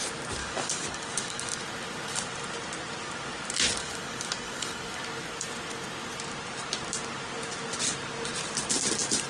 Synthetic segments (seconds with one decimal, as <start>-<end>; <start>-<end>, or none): 0.4-1.6; 3.8-5.0